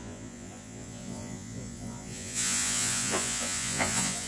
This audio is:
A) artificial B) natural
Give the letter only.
A